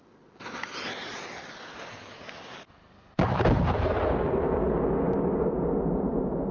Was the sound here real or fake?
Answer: real